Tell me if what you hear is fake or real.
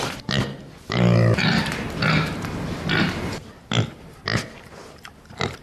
real